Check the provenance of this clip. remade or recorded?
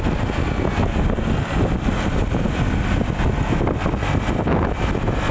recorded